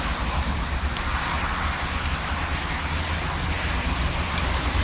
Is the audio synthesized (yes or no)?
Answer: no